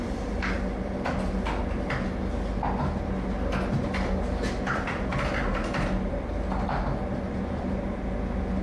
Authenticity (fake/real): real